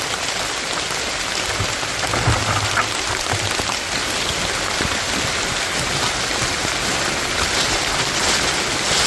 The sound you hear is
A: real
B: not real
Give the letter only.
A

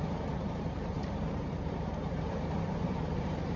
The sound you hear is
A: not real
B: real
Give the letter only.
A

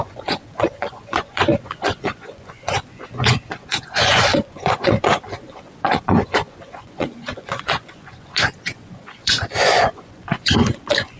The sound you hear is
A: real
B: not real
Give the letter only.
B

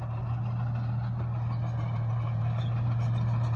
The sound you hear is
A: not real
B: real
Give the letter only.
B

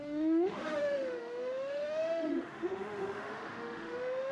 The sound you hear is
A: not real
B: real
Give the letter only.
A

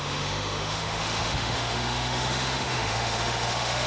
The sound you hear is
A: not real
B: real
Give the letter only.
A